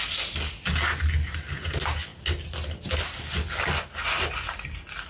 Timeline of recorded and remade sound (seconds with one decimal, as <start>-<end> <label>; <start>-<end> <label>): 0.0-5.1 recorded